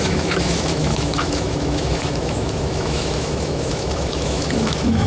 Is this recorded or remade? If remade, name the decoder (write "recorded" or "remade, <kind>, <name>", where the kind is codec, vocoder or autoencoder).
remade, autoencoder, DAC-VAE